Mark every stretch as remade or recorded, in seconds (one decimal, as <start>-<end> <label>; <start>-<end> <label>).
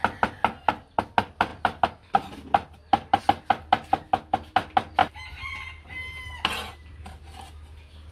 0.0-5.0 recorded; 5.0-6.2 remade; 6.2-8.1 recorded